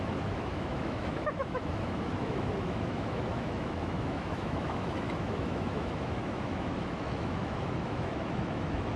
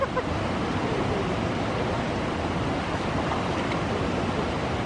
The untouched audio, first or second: second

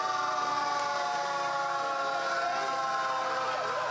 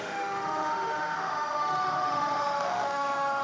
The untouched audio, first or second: first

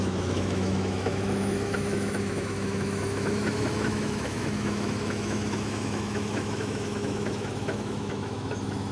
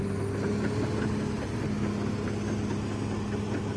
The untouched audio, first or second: second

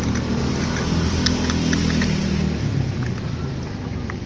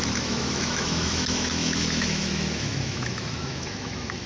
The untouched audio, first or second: first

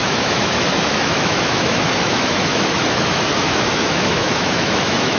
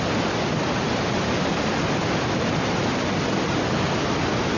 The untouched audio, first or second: second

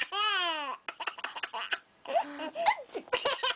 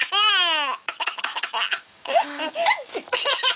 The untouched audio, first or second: first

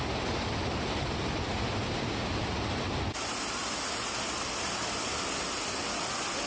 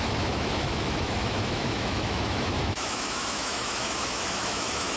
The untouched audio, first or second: first